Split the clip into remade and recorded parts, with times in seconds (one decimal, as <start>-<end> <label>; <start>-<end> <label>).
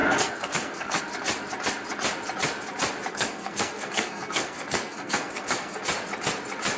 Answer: 0.0-1.0 remade; 1.0-3.1 recorded; 3.1-5.8 remade; 5.8-6.8 recorded